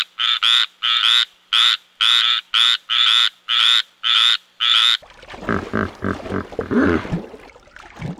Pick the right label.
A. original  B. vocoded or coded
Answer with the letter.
A